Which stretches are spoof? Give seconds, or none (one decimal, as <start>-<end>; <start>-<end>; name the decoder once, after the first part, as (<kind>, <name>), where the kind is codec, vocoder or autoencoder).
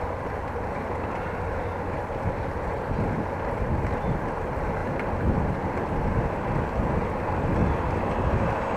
0.0-8.8 (vocoder, BigVGAN v2)